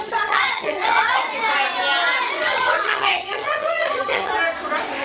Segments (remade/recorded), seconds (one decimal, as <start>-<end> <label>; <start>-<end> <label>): 0.0-1.2 remade; 1.2-2.3 recorded; 2.3-4.3 remade; 4.3-5.0 recorded